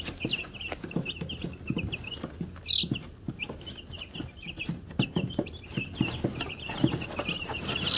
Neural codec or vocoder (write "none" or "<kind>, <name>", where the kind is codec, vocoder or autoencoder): none